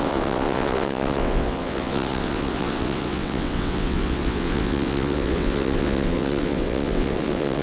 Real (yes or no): no